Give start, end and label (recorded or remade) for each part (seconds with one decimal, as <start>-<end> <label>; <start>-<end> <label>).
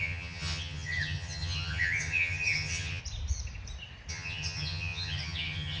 0.0-3.0 remade; 3.0-4.1 recorded; 4.1-5.8 remade